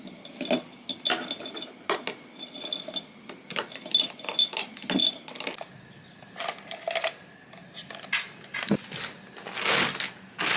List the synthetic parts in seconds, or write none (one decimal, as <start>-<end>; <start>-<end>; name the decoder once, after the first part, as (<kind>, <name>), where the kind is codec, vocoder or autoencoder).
none